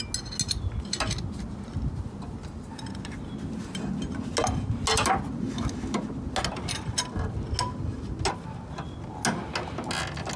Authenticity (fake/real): real